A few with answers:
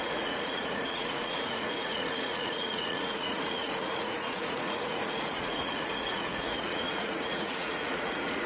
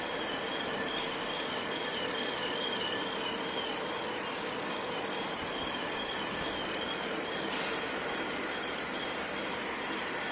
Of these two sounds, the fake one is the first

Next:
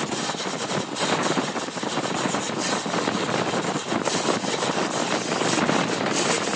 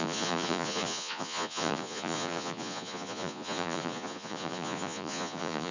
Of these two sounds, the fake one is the second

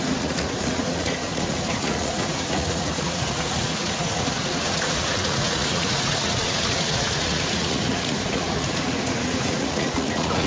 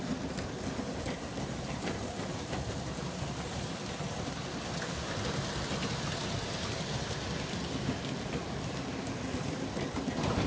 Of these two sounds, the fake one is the first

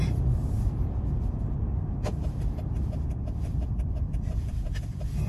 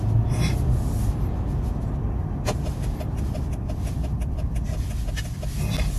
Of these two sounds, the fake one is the first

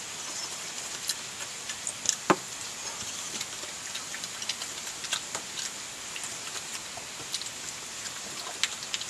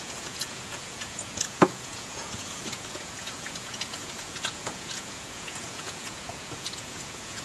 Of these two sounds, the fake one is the second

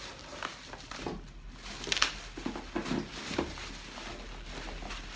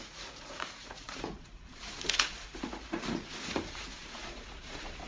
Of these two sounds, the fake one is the second